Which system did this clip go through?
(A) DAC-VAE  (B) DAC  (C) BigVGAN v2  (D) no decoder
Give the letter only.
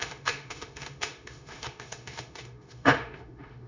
A